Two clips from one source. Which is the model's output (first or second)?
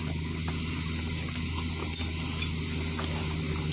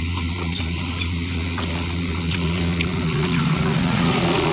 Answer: second